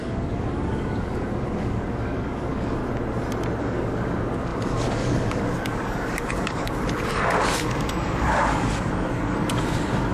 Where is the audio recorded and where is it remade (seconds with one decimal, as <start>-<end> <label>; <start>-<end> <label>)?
0.0-2.8 remade; 2.8-3.6 recorded; 3.6-10.1 remade